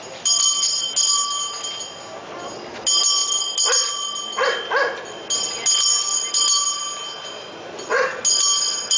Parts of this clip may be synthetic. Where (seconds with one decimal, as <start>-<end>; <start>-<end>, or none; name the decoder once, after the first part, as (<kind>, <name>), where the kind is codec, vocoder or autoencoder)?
none